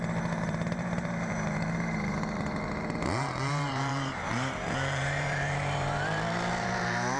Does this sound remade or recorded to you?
remade